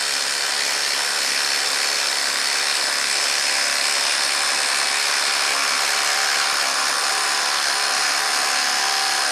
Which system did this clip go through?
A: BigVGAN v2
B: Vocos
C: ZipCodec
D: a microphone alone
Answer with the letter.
D